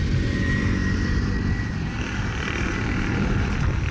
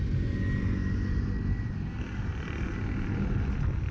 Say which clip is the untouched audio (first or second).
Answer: second